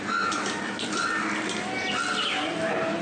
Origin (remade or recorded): recorded